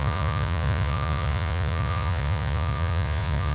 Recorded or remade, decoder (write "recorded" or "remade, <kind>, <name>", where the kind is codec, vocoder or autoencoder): remade, vocoder, Vocos